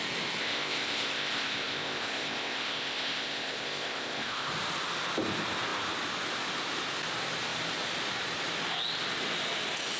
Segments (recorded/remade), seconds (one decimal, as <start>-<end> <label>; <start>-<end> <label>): 0.0-0.4 recorded; 0.4-4.5 remade; 4.5-10.0 recorded